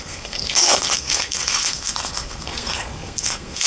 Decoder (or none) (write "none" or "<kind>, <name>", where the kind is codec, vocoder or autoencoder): codec, SNAC